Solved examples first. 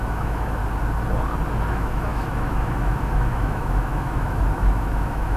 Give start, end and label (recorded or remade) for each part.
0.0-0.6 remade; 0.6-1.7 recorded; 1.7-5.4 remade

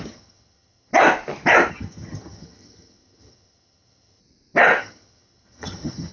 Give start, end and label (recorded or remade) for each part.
0.0-0.9 remade; 0.9-1.7 recorded; 1.7-4.2 remade; 4.2-4.8 recorded; 4.8-6.1 remade

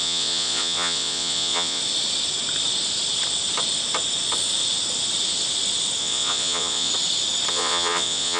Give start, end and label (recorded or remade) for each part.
0.0-1.8 remade; 1.8-6.0 recorded; 6.0-6.9 remade; 6.9-7.5 recorded; 7.5-8.4 remade

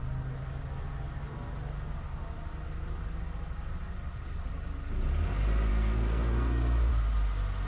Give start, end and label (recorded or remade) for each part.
0.0-5.7 recorded; 5.7-6.9 remade; 6.9-7.7 recorded

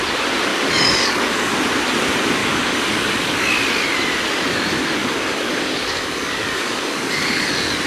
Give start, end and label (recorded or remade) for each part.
0.0-0.5 recorded; 0.5-1.5 remade; 1.5-2.4 recorded; 2.4-3.5 remade; 3.5-5.0 recorded; 5.0-7.5 remade; 7.5-7.9 recorded

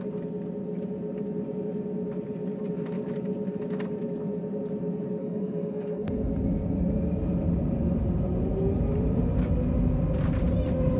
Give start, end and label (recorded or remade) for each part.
0.0-5.2 recorded; 5.2-6.3 remade; 6.3-11.0 recorded